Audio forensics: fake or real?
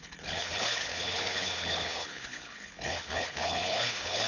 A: fake